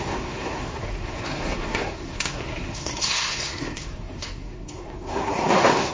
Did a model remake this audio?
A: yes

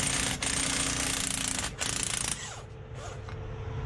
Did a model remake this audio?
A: no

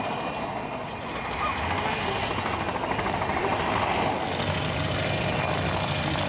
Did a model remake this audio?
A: no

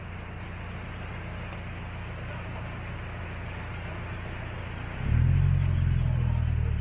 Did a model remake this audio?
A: no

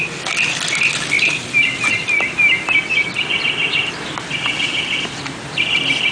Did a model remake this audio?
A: no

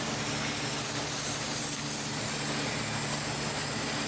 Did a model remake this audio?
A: no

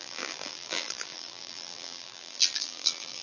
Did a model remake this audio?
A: yes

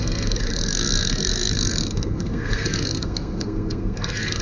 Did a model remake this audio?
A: yes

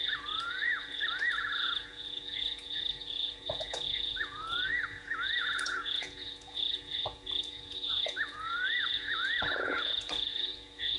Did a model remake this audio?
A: yes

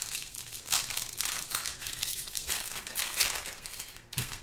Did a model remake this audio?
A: yes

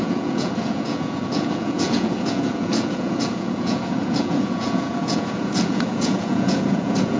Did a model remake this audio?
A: yes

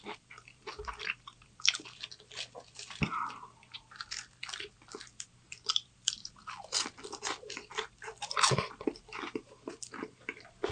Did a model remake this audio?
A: yes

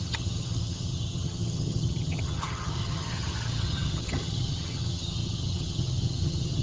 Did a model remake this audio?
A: yes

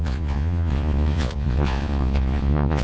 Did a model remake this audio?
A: yes